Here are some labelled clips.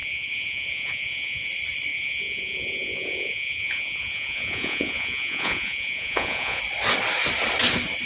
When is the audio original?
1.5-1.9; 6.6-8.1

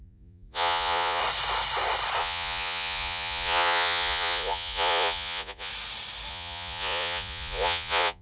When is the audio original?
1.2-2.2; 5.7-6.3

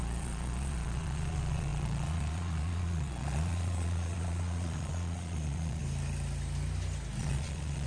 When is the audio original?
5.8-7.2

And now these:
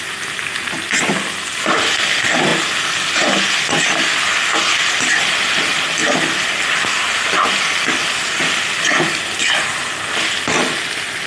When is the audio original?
0.0-11.3